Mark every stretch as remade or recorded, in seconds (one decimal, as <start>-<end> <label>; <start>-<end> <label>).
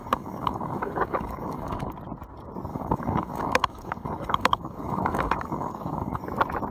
0.0-1.9 remade; 1.9-2.7 recorded; 2.7-6.2 remade; 6.2-6.7 recorded